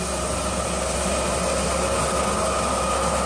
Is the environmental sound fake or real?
real